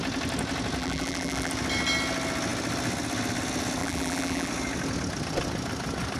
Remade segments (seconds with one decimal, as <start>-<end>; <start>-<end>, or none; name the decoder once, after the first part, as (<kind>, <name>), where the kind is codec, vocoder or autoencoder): 0.8-1.5 (vocoder, BigVGAN v2); 3.8-4.5